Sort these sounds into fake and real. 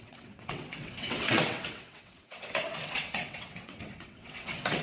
fake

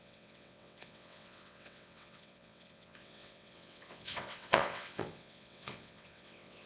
fake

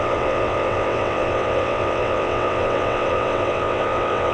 fake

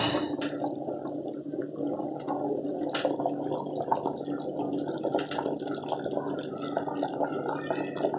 real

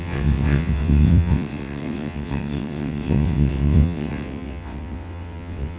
fake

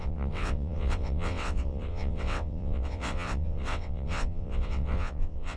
fake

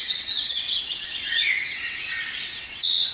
fake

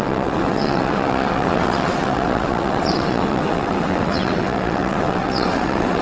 fake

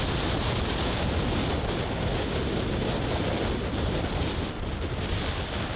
real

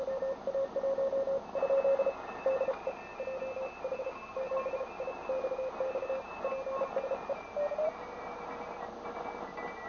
real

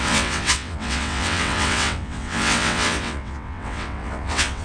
fake